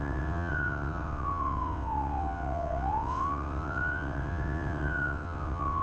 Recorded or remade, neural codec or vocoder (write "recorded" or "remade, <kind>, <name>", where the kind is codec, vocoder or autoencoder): remade, vocoder, WaveNeXt